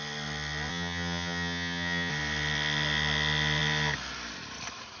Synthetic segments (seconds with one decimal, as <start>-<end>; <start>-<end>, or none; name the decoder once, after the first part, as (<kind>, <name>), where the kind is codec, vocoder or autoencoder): 0.7-2.1 (vocoder, HiFi-GAN)